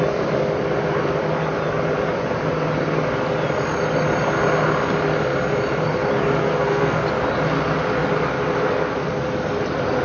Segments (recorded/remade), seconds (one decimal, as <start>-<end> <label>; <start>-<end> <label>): 0.0-6.4 recorded; 6.4-7.0 remade; 7.0-10.0 recorded